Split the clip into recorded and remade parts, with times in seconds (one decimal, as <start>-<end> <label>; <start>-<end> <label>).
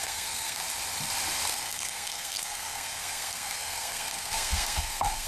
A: 0.0-0.6 remade; 0.6-1.5 recorded; 1.5-5.3 remade